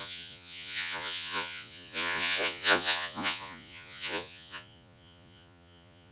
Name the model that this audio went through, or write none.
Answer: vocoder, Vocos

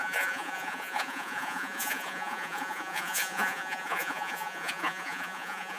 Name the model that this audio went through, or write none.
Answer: vocoder, Vocos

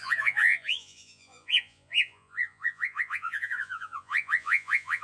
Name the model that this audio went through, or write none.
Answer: vocoder, Vocos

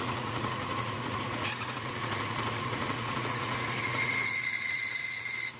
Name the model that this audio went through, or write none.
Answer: vocoder, Vocos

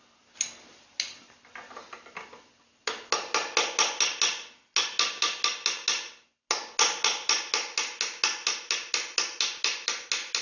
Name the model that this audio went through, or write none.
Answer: none